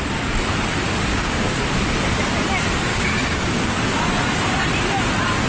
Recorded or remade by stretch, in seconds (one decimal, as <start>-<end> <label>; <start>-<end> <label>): 0.0-1.1 recorded; 1.1-1.6 remade; 1.6-2.9 recorded; 2.9-3.8 remade; 3.8-5.5 recorded